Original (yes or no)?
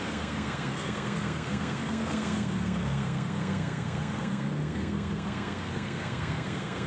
no